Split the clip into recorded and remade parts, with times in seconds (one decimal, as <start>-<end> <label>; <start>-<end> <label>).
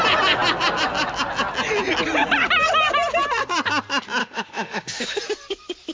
0.0-4.2 recorded; 4.2-5.2 remade; 5.2-5.9 recorded